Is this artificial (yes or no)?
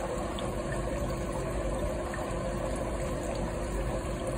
yes